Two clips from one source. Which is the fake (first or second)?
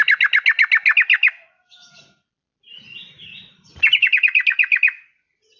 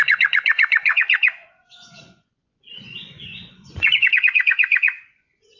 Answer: second